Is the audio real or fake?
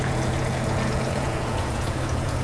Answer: fake